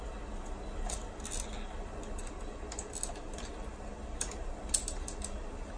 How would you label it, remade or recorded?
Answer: recorded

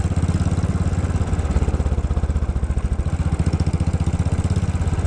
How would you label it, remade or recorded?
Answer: recorded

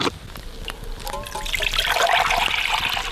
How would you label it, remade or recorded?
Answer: recorded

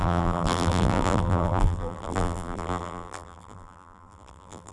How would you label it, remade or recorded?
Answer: remade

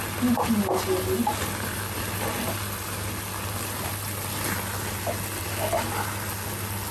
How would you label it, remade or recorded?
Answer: recorded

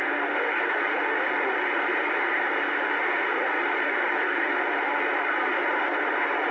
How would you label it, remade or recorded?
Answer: remade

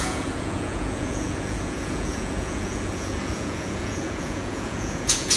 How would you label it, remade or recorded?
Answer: remade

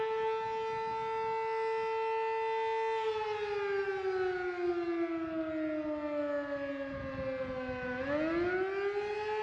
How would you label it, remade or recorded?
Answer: recorded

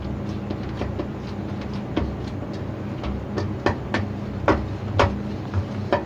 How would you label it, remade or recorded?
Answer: recorded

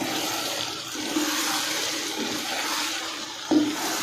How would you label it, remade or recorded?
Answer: recorded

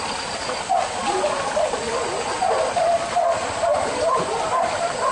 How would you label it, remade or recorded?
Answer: recorded